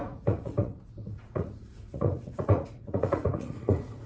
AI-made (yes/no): yes